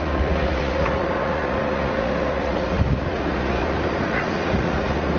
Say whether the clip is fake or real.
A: fake